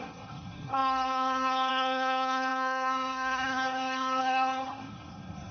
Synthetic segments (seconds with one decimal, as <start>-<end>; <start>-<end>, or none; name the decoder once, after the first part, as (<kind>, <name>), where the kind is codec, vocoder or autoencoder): 0.0-5.5 (codec, SNAC)